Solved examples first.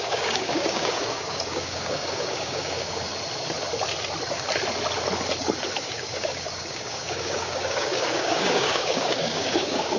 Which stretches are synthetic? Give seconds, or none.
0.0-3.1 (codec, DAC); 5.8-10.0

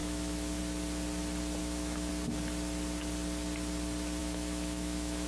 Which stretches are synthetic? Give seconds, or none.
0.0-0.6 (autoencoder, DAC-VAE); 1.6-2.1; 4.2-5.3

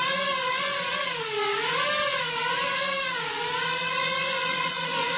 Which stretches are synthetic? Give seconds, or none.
0.0-0.7 (vocoder, Vocos); 3.8-5.2